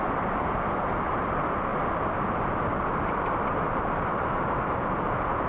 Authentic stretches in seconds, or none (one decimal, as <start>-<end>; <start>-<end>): 0.0-5.5